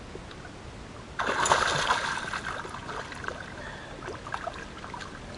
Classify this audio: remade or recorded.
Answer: recorded